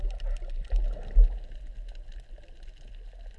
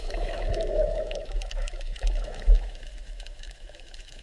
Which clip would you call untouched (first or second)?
first